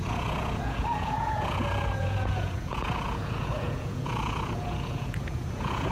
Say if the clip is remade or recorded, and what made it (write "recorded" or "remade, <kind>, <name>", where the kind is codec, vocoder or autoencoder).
remade, vocoder, Vocos